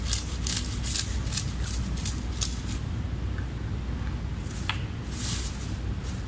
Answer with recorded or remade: recorded